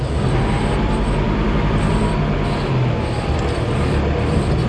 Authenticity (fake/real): real